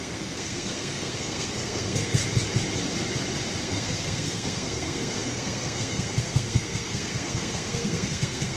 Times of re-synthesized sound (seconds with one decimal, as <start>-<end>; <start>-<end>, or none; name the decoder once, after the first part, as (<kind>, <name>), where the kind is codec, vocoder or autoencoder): 0.0-2.2 (codec, SNAC); 3.6-8.6